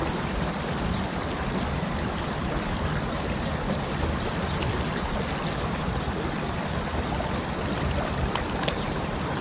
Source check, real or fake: real